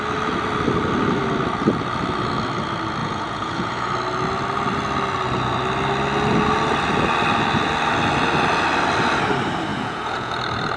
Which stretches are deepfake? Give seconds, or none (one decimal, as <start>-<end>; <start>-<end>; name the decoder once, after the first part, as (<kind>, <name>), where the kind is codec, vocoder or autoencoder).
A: 3.0-3.9 (vocoder, Vocos); 9.7-10.3